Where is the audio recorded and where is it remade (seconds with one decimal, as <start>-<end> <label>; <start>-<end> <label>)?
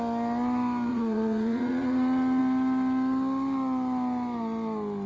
0.0-0.9 recorded; 0.9-2.4 remade; 2.4-5.1 recorded